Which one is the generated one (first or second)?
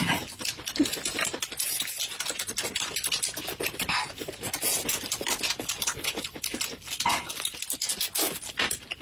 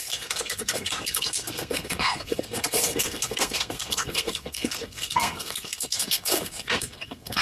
second